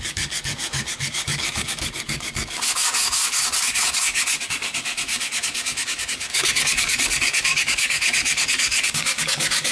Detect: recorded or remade remade